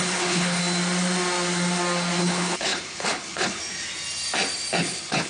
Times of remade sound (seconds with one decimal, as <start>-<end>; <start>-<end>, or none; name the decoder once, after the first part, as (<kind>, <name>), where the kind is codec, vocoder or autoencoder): 0.0-0.6 (codec, HILCodec); 2.2-3.6; 4.8-5.3